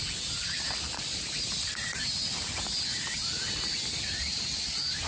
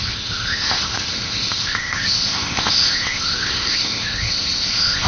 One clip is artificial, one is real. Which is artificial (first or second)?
second